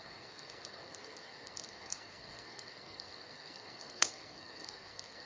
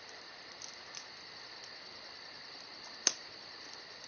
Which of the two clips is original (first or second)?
second